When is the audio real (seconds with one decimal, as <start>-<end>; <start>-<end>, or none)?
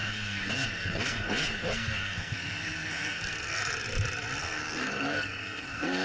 3.6-4.4